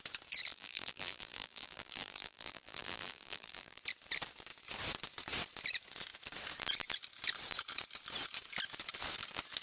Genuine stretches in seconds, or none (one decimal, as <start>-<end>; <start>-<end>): 0.0-0.5; 3.8-9.6